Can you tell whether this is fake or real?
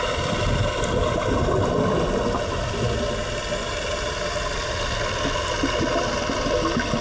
real